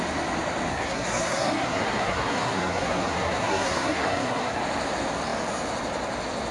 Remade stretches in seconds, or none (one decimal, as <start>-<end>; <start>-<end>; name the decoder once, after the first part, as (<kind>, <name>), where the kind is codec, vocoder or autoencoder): 0.7-4.6 (codec, SNAC)